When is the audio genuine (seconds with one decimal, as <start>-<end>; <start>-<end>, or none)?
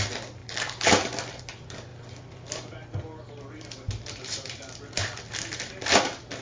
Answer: 0.0-0.4; 1.4-1.9; 5.7-6.4